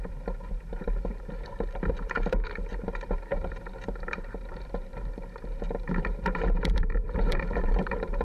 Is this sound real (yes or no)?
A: no